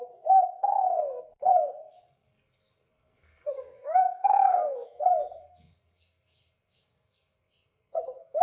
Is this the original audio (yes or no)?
no